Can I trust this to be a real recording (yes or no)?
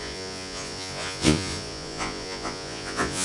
no